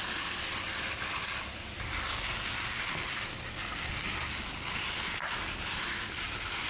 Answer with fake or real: real